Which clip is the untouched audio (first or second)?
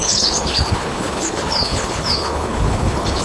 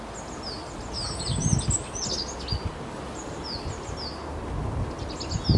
second